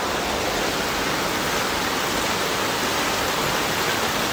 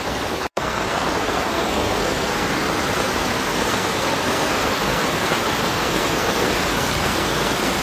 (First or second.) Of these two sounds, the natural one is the first